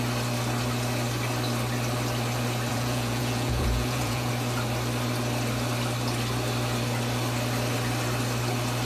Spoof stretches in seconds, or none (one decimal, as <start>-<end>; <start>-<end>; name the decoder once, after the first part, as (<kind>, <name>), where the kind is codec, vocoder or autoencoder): 2.7-4.3 (vocoder, Vocos)